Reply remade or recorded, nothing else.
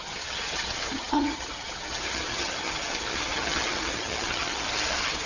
remade